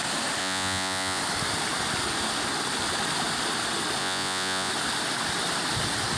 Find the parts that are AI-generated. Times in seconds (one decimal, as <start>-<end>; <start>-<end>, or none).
0.4-1.2; 4.0-4.7